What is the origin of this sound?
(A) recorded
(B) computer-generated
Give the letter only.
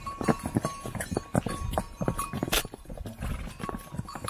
A